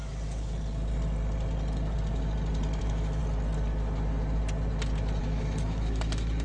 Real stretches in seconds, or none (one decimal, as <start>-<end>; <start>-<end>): 0.0-2.8; 3.2-5.2